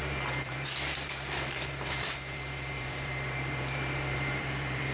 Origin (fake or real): fake